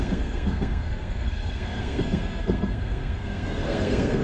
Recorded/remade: remade